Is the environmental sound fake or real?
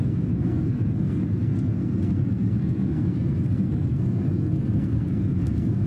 fake